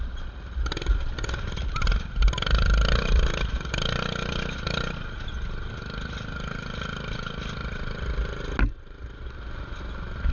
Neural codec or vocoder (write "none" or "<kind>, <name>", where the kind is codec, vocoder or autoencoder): none